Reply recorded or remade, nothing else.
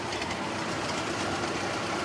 recorded